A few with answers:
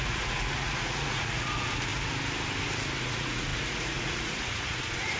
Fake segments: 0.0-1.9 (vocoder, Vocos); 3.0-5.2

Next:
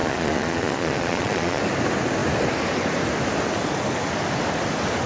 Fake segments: 0.0-1.6 (vocoder, Vocos)

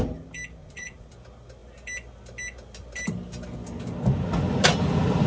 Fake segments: 0.6-1.1 (vocoder, Vocos)

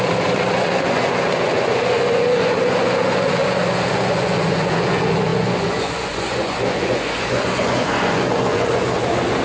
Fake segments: 0.0-9.4 (vocoder, Vocos)

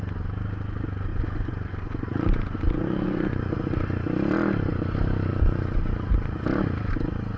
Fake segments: 1.1-3.8 (vocoder, Vocos); 5.3-6.4

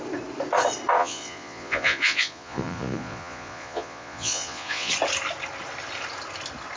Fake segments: 1.0-4.9 (vocoder, Vocos)